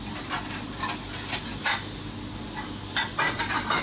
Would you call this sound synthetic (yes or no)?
no